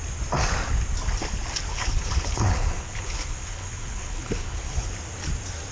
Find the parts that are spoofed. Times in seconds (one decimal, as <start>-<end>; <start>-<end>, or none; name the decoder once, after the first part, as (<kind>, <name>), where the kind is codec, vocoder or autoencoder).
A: 1.7-4.9 (codec, HILCodec)